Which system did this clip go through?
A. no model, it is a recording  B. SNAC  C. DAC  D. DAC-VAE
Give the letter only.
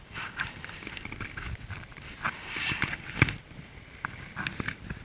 A